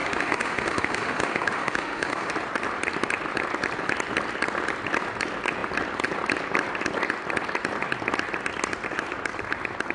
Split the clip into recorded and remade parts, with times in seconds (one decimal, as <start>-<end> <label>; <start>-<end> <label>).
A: 0.0-2.3 remade; 2.3-9.9 recorded